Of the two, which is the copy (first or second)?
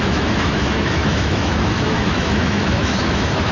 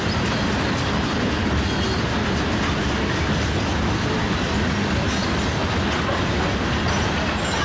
first